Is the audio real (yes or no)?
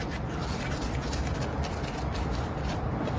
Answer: yes